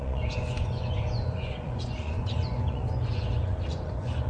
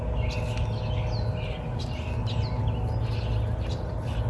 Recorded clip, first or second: second